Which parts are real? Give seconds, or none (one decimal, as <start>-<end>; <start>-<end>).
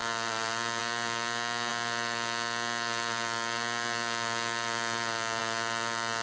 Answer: 0.0-6.2